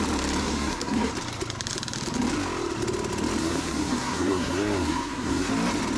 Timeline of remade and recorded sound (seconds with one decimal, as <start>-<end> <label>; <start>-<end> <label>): 0.0-0.4 recorded; 0.4-1.1 remade; 1.1-3.4 recorded; 3.4-5.5 remade; 5.5-6.0 recorded